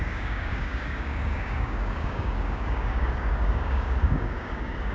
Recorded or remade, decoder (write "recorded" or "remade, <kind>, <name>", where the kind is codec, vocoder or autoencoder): remade, codec, DAC